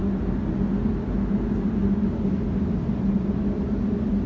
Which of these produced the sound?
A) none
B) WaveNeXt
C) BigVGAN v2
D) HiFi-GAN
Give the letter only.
A